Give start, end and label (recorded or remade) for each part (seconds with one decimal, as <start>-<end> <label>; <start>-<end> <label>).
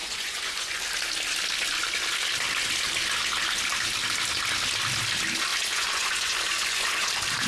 0.0-0.8 remade; 0.8-5.5 recorded; 5.5-7.1 remade; 7.1-7.5 recorded